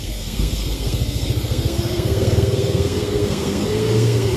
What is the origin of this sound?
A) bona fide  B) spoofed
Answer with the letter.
B